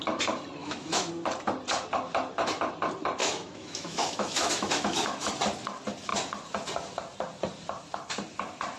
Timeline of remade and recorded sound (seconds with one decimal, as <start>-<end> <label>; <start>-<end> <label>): 0.0-0.6 recorded; 0.6-1.1 remade; 1.1-3.2 recorded; 3.2-5.3 remade; 5.3-8.8 recorded